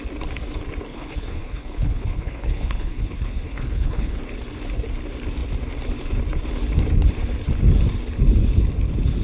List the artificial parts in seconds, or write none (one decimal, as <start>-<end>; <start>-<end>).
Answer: 0.9-4.2